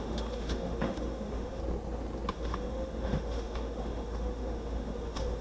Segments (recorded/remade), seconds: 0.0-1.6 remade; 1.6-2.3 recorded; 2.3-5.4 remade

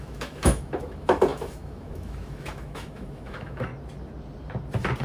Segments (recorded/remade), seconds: 0.0-3.7 remade; 3.7-5.0 recorded

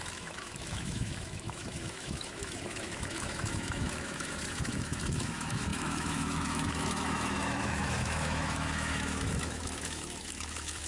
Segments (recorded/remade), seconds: 0.0-10.9 remade

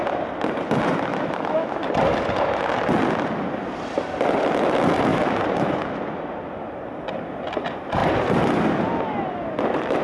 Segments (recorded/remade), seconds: 0.0-1.1 recorded; 1.1-1.7 remade; 1.7-10.0 recorded

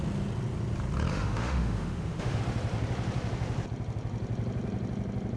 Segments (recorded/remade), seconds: 0.0-1.1 recorded; 1.1-2.4 remade; 2.4-5.4 recorded

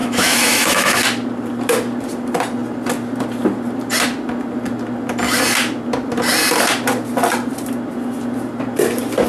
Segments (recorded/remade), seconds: 0.0-1.0 remade; 1.0-9.3 recorded

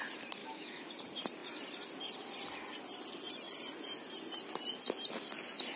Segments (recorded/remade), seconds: 0.0-0.4 recorded; 0.4-0.9 remade; 0.9-5.8 recorded